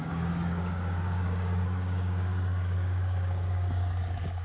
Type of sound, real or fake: fake